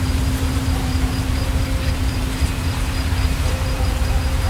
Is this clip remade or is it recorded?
remade